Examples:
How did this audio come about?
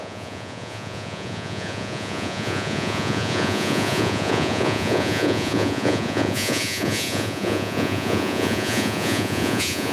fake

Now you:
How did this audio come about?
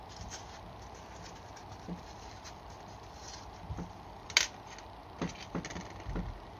real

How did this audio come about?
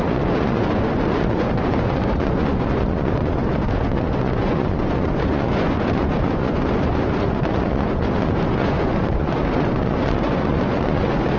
fake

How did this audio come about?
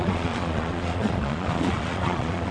fake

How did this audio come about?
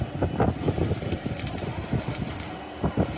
real